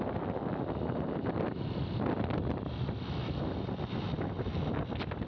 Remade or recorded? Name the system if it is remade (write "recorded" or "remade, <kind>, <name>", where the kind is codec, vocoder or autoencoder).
recorded